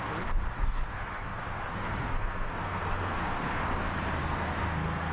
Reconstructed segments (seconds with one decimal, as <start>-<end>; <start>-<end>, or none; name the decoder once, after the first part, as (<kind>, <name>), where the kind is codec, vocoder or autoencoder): 0.5-3.6 (codec, SNAC); 4.2-5.1